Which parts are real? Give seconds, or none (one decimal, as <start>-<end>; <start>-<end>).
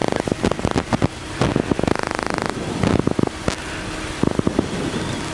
0.0-5.3